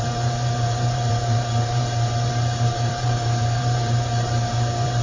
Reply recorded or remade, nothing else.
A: remade